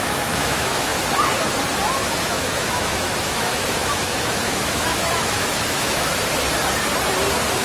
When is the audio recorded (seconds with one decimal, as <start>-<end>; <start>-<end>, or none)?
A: 0.9-2.1; 6.1-7.6